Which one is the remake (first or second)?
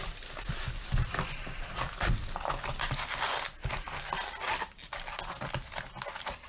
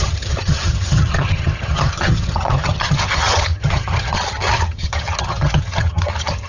second